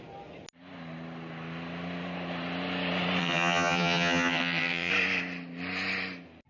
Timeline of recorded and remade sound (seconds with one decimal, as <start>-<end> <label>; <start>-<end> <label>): 0.0-3.2 recorded; 3.2-4.9 remade; 4.9-6.5 recorded